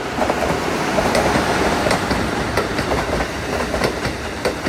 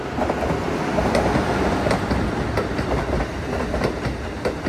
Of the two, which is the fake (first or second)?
first